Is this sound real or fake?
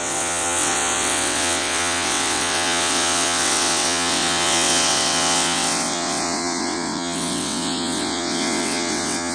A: fake